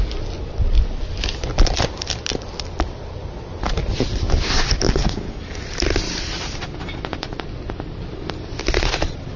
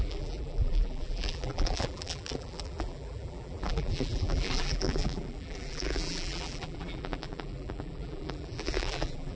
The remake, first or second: second